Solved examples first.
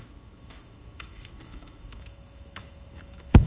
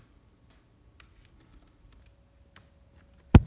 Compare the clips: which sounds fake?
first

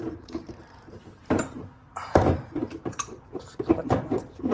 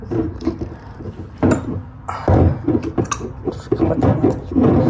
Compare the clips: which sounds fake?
first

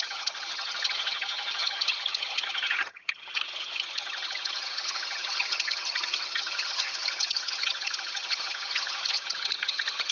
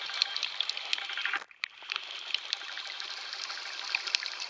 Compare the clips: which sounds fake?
first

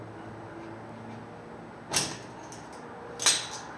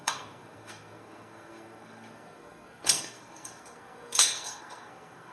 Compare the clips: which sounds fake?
second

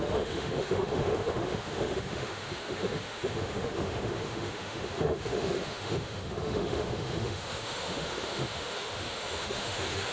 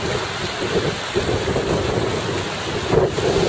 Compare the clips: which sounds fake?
first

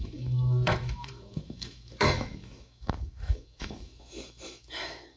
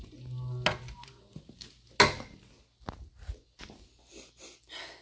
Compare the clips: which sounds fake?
first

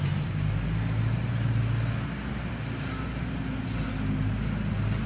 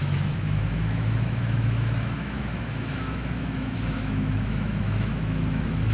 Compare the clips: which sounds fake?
second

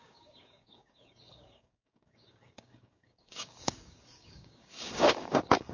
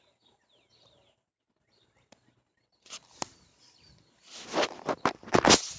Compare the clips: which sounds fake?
first